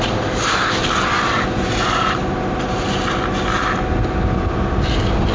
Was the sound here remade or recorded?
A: recorded